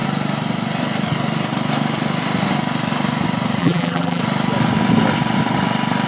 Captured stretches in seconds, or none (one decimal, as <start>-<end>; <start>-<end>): 0.0-3.6; 4.2-6.1